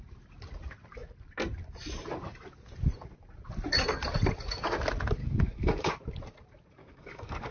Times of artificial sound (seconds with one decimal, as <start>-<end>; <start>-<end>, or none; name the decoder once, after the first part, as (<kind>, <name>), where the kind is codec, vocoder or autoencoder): 5.2-5.9 (codec, DAC); 6.8-7.5

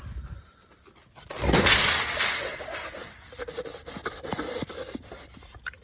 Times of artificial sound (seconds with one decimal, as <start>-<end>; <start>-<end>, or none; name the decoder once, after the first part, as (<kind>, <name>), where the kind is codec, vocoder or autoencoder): none

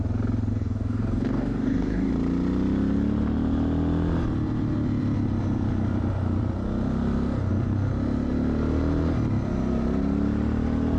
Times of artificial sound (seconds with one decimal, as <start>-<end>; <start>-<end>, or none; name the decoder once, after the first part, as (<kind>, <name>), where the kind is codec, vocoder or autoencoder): 0.5-2.1 (codec, DAC)

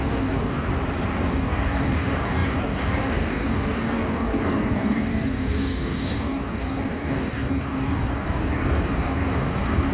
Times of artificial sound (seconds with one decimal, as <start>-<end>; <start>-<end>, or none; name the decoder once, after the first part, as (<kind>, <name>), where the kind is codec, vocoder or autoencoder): 0.0-0.7 (codec, DAC); 1.3-9.9

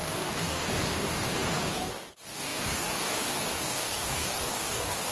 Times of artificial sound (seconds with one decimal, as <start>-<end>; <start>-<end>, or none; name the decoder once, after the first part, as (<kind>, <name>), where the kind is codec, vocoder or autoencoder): 0.0-5.1 (codec, DAC)

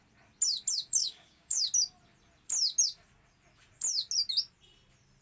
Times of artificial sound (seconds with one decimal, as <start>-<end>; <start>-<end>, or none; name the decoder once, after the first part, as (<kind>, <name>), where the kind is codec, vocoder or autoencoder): 1.0-1.6 (codec, DAC)

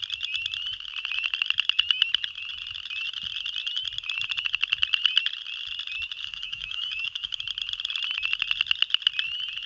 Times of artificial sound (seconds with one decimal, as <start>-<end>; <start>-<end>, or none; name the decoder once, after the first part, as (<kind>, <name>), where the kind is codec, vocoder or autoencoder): 6.2-7.4 (codec, DAC)

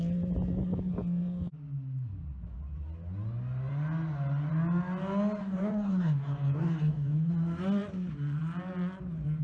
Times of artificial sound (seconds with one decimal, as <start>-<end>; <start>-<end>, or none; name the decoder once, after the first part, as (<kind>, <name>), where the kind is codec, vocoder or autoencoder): 5.4-7.3 (codec, DAC)